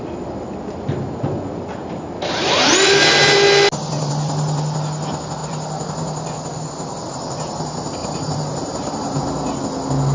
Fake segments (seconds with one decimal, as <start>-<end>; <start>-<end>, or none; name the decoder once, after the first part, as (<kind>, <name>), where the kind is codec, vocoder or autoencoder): 8.0-9.2 (vocoder, BigVGAN v2)

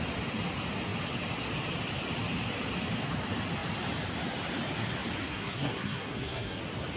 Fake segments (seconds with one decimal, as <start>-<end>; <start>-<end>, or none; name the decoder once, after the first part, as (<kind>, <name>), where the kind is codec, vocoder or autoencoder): 5.2-6.6 (codec, SNAC)

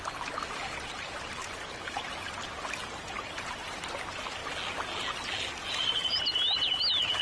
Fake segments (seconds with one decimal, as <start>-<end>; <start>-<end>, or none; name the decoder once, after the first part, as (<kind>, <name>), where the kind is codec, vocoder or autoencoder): none

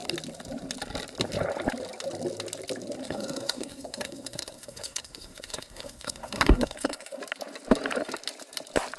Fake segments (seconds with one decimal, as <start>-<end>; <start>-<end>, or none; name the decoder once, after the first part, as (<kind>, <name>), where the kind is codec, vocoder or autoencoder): 3.0-7.2 (codec, SNAC)

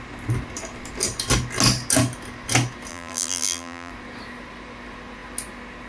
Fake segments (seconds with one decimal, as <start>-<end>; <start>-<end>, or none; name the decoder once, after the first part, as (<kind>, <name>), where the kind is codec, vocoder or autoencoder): 2.9-3.9 (vocoder, BigVGAN v2)

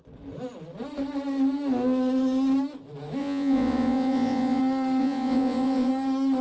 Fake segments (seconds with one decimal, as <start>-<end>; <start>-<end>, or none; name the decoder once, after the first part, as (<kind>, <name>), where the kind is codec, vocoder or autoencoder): 3.2-4.6 (vocoder, Vocos); 5.0-5.9

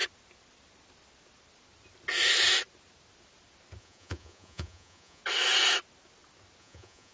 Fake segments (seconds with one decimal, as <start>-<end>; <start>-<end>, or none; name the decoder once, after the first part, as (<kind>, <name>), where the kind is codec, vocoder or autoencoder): 3.8-5.2 (vocoder, Vocos); 6.6-7.1

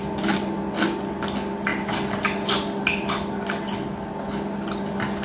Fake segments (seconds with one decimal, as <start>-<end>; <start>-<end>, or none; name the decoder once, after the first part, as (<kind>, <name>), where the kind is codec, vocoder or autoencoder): none